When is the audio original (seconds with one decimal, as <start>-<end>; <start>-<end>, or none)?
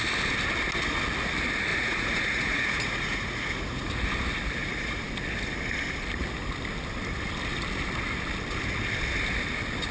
0.0-1.7; 3.9-4.6; 5.1-9.9